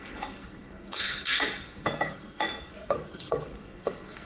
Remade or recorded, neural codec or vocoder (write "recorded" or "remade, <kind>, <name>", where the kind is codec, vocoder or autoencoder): remade, codec, SNAC